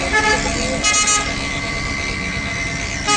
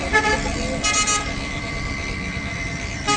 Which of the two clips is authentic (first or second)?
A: first